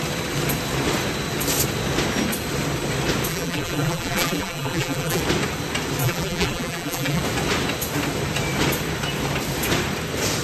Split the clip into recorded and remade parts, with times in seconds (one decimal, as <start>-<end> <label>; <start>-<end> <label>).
0.0-3.3 recorded; 3.3-5.2 remade; 5.2-6.0 recorded; 6.0-7.2 remade; 7.2-10.4 recorded

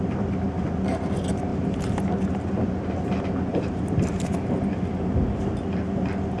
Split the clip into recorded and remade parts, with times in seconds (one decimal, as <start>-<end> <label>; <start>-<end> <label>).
0.0-1.5 recorded; 1.5-2.0 remade; 2.0-3.5 recorded; 3.5-5.4 remade; 5.4-6.4 recorded

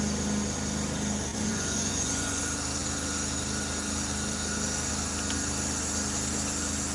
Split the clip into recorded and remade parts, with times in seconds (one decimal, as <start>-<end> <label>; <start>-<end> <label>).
0.0-1.3 recorded; 1.3-2.4 remade; 2.4-6.9 recorded

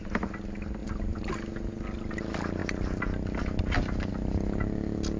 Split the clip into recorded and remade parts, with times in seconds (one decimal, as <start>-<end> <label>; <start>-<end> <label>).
0.0-0.8 recorded; 0.8-1.3 remade; 1.3-5.2 recorded

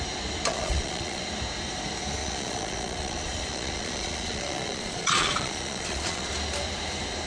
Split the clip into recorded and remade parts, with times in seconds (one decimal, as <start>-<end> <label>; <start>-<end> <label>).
0.0-0.5 recorded; 0.5-1.2 remade; 1.2-2.2 recorded; 2.2-6.3 remade; 6.3-7.3 recorded

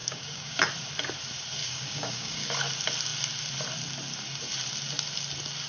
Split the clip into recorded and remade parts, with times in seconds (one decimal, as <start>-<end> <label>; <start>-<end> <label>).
0.0-0.6 remade; 0.6-1.6 recorded; 1.6-2.5 remade; 2.5-5.7 recorded

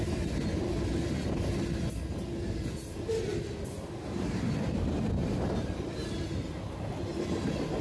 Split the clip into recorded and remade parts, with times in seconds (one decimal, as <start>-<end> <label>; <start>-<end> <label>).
0.0-7.8 recorded